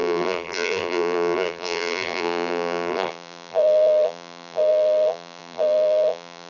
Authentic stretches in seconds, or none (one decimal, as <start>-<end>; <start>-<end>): none